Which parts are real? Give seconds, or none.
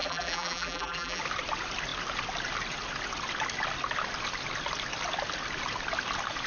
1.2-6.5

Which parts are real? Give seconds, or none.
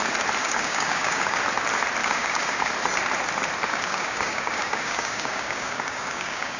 0.0-0.4; 1.4-2.0; 2.7-3.7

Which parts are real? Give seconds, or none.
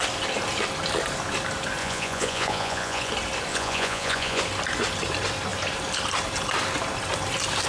0.0-1.8; 3.1-3.5; 4.4-7.7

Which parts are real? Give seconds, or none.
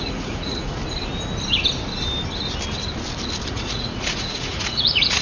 0.8-3.5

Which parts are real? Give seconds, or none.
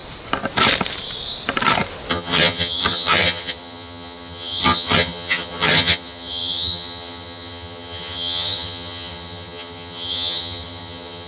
0.0-2.1